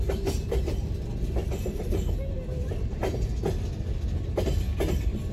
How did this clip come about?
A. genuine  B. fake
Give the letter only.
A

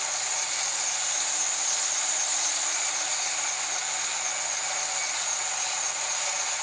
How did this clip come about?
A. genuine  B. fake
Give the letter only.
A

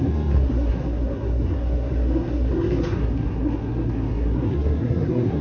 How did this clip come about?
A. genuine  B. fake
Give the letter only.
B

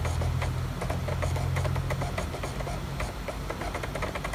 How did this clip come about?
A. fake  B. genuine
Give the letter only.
B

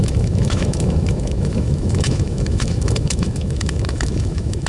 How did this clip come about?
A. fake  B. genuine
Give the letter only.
A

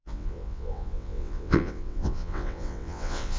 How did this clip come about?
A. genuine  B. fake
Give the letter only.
B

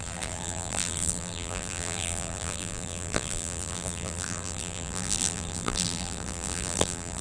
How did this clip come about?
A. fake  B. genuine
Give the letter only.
A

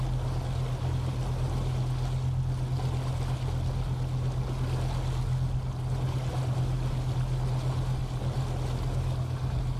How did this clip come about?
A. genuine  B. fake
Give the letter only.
A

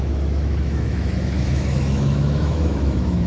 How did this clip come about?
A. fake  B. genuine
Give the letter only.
A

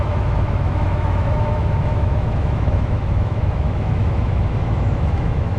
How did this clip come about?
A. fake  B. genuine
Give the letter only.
A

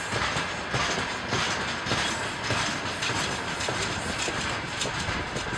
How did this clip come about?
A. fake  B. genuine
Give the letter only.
B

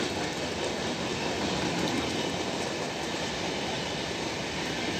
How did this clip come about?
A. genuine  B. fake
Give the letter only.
A